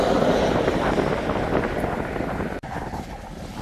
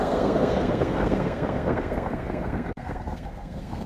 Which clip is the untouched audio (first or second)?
first